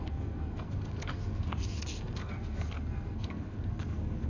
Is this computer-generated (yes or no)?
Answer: yes